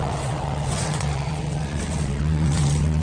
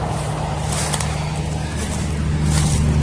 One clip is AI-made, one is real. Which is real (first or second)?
second